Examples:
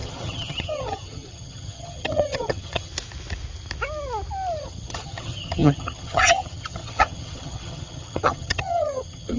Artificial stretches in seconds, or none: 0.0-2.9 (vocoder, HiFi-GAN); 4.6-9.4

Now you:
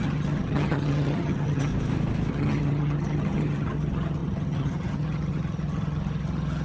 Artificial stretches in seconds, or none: 0.0-1.7 (vocoder, HiFi-GAN); 2.3-6.6

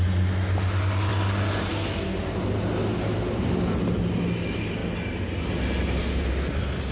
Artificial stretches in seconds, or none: none

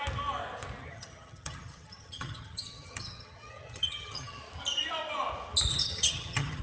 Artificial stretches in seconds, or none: 0.8-4.4 (vocoder, HiFi-GAN); 5.7-6.6